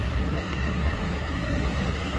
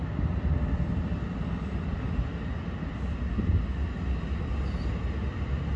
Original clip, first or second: second